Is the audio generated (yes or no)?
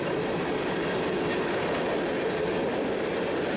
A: no